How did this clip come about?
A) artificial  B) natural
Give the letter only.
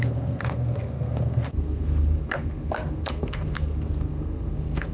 A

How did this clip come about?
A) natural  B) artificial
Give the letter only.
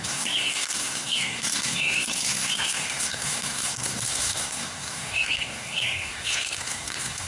B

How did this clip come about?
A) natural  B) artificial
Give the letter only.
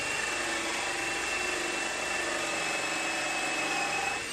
A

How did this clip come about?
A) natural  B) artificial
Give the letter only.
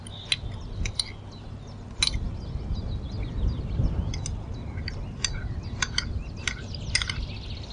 A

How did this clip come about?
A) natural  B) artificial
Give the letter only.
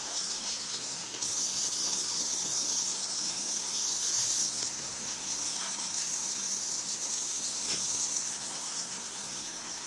B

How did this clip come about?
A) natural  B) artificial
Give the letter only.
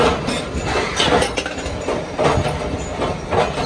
A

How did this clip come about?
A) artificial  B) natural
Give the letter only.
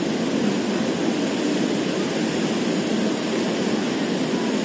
B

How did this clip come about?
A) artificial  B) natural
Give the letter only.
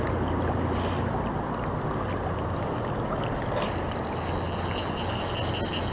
B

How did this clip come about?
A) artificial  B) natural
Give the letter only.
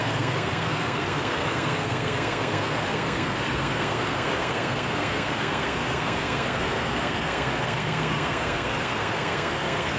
A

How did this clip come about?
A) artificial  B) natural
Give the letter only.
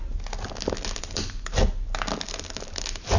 B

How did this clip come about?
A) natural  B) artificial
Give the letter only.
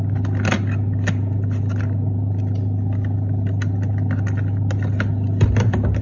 A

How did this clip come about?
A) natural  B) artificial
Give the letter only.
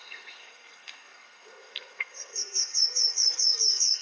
B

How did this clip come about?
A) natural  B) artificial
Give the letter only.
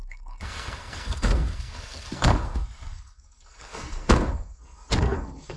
B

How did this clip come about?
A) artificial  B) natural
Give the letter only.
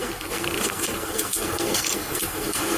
A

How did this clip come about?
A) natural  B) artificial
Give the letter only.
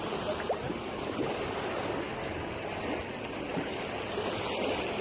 A